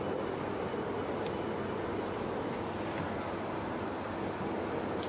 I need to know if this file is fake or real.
real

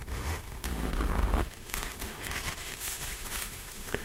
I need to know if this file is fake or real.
fake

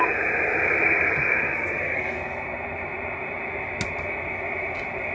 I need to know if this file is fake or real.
real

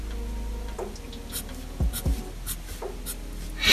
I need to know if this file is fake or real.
real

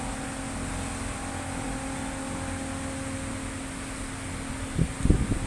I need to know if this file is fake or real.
real